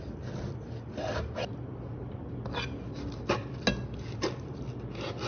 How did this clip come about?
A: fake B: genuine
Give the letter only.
B